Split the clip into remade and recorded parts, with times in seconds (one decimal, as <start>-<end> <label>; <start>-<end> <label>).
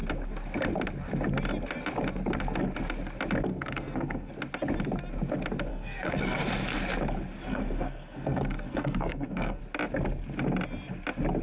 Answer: 0.0-3.5 recorded; 3.5-4.3 remade; 4.3-5.7 recorded; 5.7-6.4 remade; 6.4-7.5 recorded; 7.5-9.6 remade; 9.6-11.4 recorded